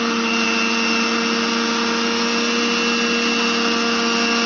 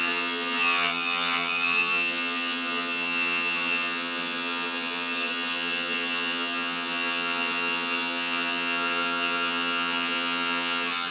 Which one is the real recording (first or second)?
first